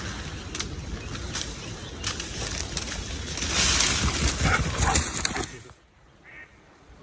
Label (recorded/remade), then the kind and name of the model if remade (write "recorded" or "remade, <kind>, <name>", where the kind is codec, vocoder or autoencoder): recorded